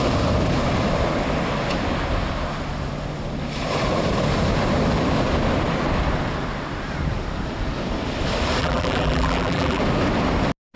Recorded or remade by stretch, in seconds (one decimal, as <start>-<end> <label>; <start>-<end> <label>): 0.0-8.6 recorded; 8.6-9.8 remade; 9.8-10.8 recorded